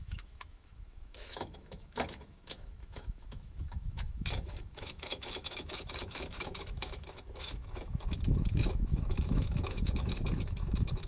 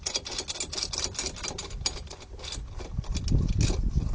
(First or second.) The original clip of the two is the second